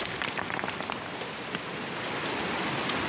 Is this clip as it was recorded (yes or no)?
yes